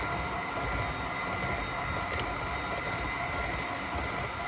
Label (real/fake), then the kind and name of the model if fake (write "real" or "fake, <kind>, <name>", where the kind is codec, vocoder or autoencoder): real